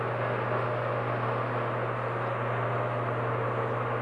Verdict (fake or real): real